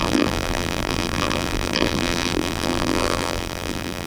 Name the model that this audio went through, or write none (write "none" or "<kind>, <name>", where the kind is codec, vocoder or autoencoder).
vocoder, BigVGAN v2